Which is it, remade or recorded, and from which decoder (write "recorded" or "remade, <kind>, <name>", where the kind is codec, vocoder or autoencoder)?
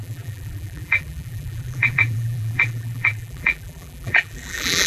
remade, vocoder, BigVGAN v2